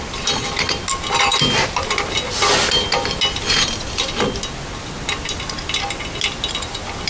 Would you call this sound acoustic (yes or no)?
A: yes